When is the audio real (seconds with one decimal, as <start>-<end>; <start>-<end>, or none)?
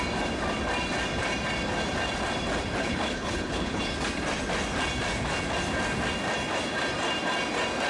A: 0.0-2.8; 3.8-7.9